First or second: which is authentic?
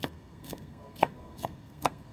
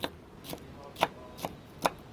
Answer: second